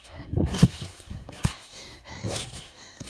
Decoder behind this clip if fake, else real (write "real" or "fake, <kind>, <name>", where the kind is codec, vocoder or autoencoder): fake, codec, SNAC